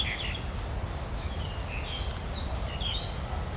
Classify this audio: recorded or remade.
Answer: recorded